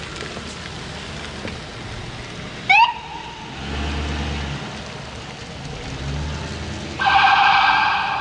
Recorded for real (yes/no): yes